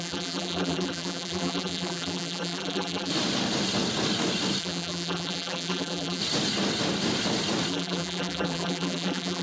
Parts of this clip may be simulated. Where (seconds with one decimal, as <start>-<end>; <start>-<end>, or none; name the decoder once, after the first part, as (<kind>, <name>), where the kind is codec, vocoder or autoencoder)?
0.0-3.1 (vocoder, BigVGAN v2); 4.6-6.2; 7.7-9.4